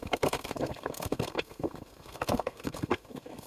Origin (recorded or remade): remade